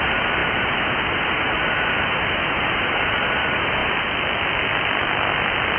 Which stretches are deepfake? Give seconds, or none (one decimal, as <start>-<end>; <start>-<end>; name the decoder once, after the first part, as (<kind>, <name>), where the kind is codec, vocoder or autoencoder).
none